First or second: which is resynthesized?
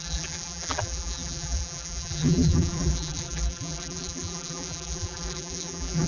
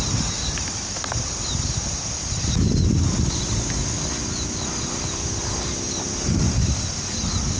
first